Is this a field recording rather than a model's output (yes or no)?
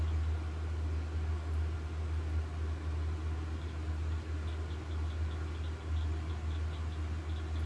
yes